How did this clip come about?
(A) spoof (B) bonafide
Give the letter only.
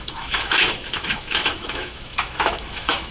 A